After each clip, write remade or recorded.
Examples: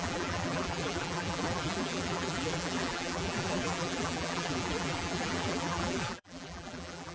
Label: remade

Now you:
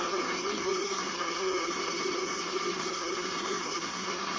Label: remade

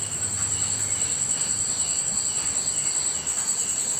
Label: recorded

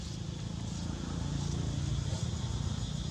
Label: recorded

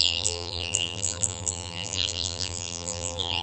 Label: remade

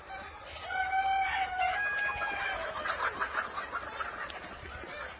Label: recorded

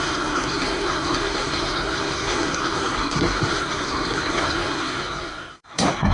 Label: remade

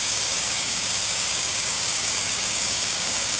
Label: remade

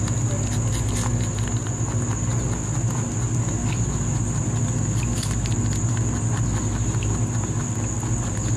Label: recorded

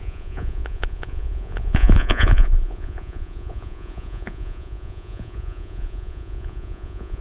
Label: remade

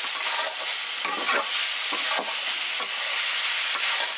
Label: recorded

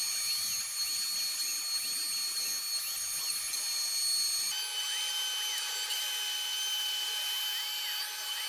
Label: recorded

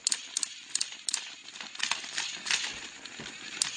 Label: recorded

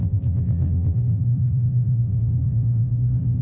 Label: remade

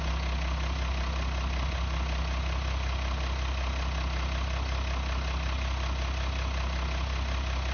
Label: recorded